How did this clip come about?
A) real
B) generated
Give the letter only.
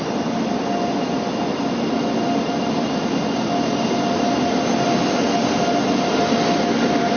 A